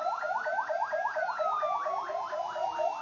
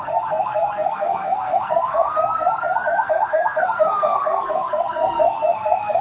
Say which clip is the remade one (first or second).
second